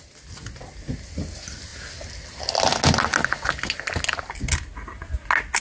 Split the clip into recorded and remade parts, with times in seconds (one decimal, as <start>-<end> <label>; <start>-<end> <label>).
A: 0.0-5.6 recorded